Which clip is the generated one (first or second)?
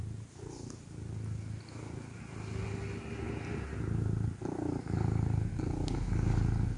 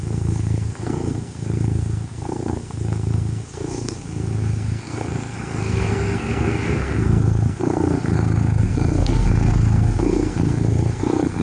second